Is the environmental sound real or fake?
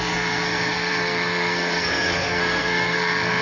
fake